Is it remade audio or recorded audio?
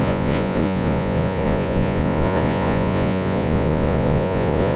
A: remade